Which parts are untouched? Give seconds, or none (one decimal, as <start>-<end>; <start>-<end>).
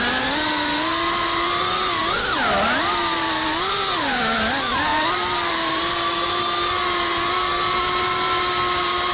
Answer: 0.0-9.1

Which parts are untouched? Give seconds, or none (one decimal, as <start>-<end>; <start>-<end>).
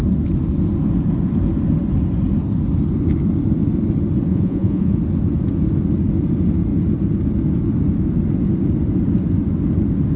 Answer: 0.0-4.3; 5.0-10.2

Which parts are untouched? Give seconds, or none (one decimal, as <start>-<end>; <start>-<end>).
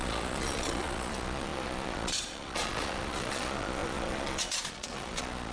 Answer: none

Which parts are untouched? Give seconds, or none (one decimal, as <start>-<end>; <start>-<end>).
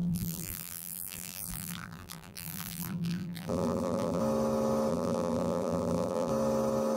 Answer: 4.2-4.9; 6.3-7.0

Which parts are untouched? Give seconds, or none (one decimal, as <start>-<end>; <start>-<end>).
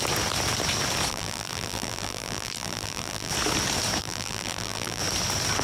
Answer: 0.0-1.1; 3.3-4.0; 5.0-5.6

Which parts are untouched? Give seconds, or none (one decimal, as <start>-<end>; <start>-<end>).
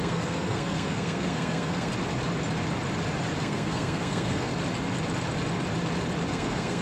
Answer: 1.9-3.4; 4.5-6.3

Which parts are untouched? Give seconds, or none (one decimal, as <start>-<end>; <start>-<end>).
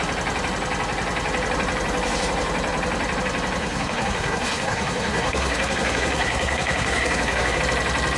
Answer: 0.0-3.6; 7.6-8.2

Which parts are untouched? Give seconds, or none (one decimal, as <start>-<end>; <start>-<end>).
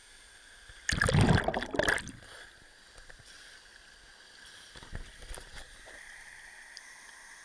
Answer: 0.0-7.4